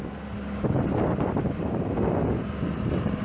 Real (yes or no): yes